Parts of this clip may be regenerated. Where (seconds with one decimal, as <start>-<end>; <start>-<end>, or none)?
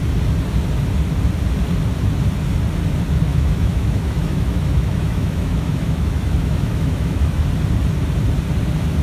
3.3-7.4